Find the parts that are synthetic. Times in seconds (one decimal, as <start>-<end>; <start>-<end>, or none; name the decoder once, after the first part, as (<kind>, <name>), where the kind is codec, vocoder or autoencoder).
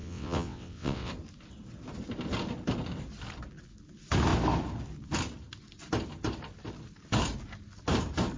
0.0-1.1 (vocoder, WaveNeXt)